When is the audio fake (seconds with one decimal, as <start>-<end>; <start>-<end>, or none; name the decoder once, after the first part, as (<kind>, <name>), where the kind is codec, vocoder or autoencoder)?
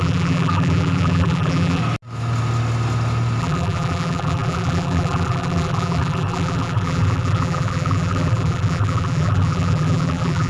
0.0-1.8 (vocoder, BigVGAN v2); 3.4-10.5